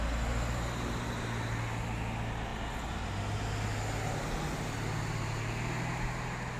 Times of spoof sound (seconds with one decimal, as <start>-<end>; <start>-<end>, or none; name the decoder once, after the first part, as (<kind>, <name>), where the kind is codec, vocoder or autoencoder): none